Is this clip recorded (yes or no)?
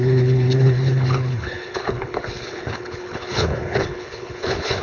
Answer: no